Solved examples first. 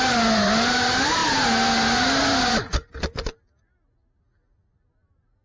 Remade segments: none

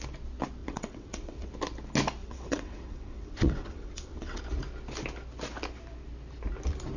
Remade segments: 0.6-1.5 (vocoder, WaveNeXt); 2.2-4.4

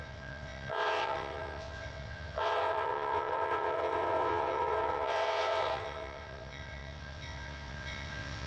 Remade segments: 0.0-8.5 (vocoder, WaveNeXt)

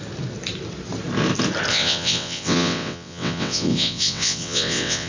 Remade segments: 1.7-5.1 (vocoder, WaveNeXt)

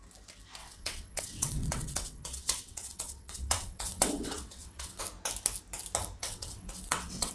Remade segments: 0.6-5.0 (vocoder, WaveNeXt); 6.2-7.3